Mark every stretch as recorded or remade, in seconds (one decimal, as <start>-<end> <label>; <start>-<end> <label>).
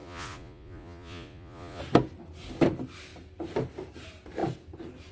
0.0-1.8 remade; 1.8-5.1 recorded